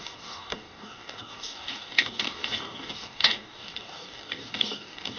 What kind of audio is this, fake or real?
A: fake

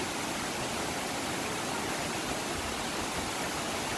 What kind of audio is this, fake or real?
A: real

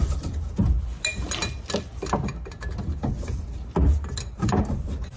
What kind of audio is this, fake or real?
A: real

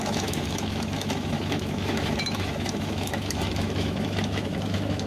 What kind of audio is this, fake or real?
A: fake